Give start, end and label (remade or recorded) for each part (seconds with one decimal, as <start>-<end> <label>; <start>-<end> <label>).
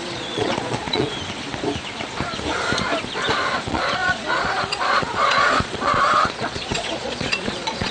0.0-1.1 remade; 1.1-3.5 recorded; 3.5-7.9 remade